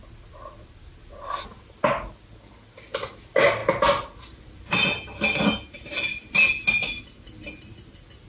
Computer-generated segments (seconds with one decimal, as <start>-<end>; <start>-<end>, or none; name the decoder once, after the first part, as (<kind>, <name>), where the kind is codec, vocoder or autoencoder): none